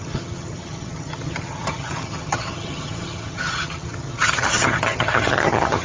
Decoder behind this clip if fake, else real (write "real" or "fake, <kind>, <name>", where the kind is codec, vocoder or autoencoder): fake, vocoder, HiFi-GAN